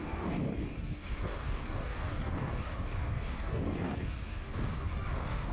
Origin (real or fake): fake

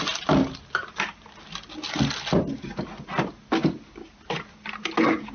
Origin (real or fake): real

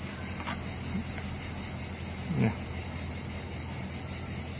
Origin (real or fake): real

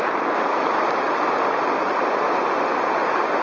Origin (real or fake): real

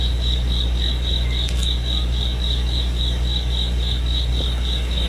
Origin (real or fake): fake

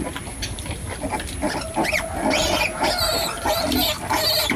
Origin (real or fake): real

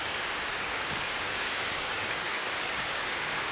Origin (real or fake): fake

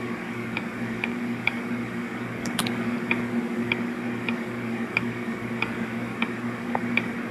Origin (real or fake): fake